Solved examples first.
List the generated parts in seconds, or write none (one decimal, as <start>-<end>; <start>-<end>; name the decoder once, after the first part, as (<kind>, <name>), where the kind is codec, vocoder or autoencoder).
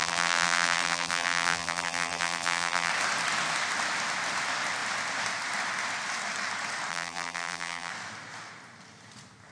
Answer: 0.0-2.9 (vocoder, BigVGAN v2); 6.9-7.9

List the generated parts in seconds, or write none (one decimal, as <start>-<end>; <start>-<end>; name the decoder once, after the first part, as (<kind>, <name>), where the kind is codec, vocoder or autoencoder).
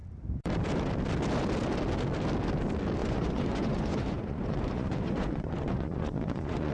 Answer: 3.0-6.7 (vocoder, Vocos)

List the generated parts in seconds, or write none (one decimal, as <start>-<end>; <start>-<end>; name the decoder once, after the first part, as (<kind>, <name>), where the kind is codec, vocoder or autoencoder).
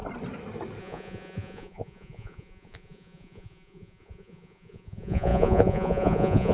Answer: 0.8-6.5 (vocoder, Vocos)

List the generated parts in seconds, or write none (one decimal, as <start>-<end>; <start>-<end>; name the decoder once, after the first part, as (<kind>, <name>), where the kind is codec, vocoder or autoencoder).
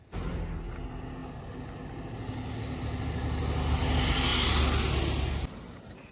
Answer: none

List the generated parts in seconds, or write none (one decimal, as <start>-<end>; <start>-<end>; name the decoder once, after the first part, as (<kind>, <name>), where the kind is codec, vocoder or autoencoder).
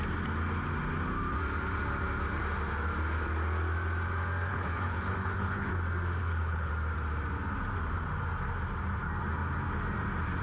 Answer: 4.5-5.7 (codec, HILCodec); 6.2-6.7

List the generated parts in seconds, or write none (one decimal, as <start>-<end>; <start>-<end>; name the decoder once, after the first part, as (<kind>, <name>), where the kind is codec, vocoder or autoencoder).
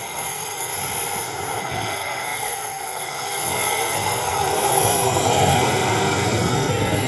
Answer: 0.0-0.7 (codec, SNAC); 1.6-7.1